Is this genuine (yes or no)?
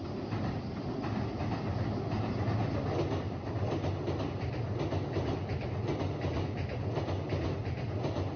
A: yes